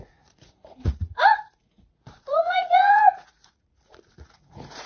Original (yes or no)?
no